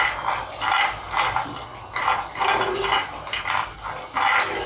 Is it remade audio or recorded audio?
recorded